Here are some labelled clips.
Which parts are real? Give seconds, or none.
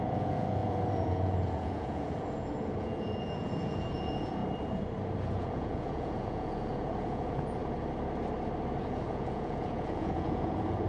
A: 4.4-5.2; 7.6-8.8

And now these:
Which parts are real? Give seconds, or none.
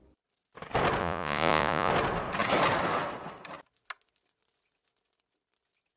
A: 0.0-1.0; 1.9-6.0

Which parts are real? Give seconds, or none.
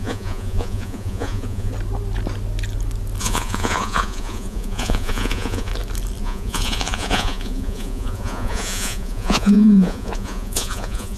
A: 1.7-3.2; 5.7-6.2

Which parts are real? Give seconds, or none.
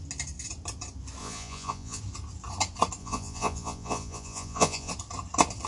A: 0.0-1.2; 2.0-3.0; 4.9-5.7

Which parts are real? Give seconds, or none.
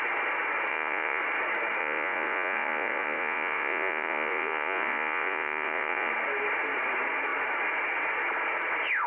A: 0.0-0.7; 1.2-1.8; 6.1-9.1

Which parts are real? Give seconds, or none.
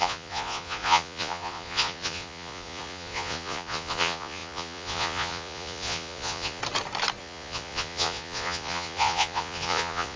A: 6.6-7.2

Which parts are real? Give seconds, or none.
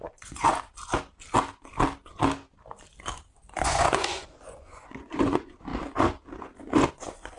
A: 0.5-3.6; 5.7-6.9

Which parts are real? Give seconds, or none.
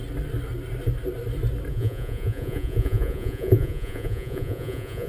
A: 0.0-1.7